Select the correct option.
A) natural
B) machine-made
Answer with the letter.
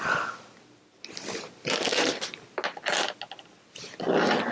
A